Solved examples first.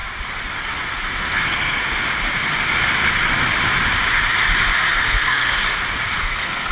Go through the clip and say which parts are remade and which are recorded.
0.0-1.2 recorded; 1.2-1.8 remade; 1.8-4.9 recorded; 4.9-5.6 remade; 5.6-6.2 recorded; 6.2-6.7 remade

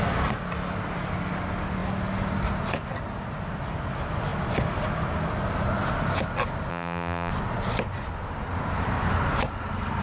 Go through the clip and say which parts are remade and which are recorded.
0.0-6.7 recorded; 6.7-7.3 remade; 7.3-10.0 recorded